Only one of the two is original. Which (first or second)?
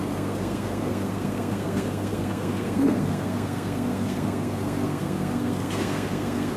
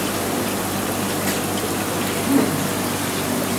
second